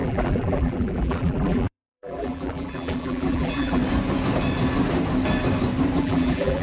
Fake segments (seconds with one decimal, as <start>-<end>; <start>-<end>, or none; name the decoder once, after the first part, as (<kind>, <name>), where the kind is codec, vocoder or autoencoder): 0.0-3.8 (vocoder, BigVGAN v2); 6.0-6.6